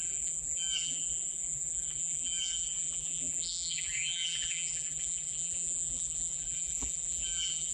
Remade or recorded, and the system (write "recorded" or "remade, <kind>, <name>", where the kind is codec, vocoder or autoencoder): remade, vocoder, BigVGAN v2